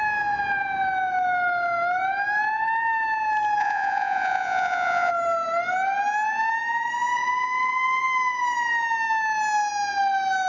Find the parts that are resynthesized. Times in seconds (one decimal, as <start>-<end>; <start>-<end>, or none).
3.6-5.1